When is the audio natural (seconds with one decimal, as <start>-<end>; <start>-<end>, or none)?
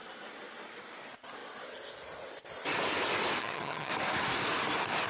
0.0-3.4; 3.9-5.1